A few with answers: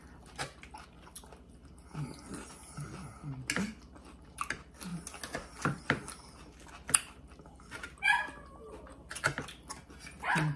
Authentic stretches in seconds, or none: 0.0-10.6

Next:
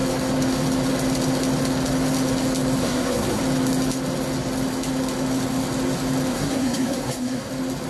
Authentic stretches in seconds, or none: 0.0-2.8; 3.4-6.3; 7.5-7.9

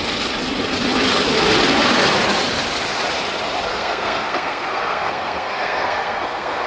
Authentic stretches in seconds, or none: 0.0-3.7